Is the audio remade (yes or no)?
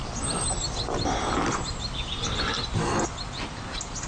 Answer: no